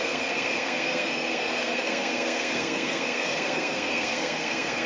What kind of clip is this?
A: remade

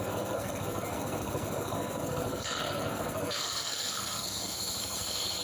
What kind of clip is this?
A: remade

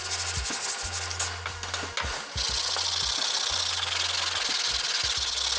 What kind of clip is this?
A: recorded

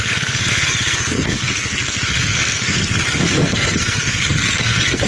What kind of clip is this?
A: remade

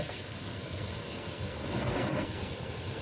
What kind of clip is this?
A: remade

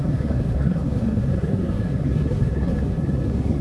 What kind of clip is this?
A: remade